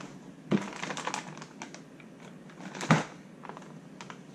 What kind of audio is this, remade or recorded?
recorded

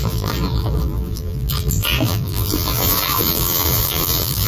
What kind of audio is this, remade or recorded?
remade